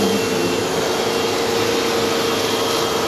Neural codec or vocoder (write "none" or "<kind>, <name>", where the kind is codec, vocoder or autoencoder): none